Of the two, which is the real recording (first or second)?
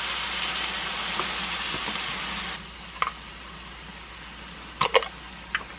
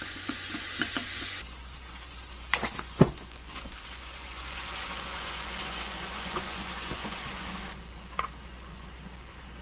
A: first